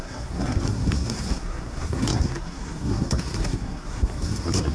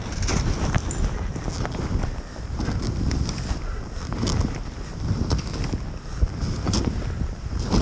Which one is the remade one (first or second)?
first